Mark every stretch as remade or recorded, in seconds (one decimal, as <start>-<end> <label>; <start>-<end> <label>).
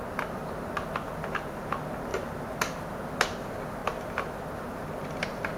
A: 0.0-2.1 recorded; 2.1-2.9 remade; 2.9-3.8 recorded; 3.8-4.4 remade; 4.4-5.6 recorded